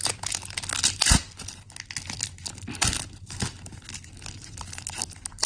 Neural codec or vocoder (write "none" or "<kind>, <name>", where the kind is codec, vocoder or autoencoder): none